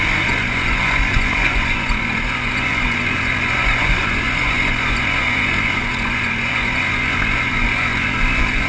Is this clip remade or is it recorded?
remade